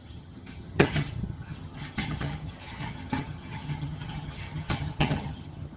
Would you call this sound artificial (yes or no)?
yes